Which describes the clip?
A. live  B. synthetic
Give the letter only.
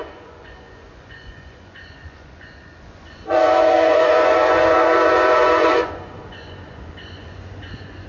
B